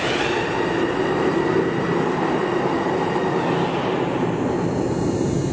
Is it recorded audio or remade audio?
recorded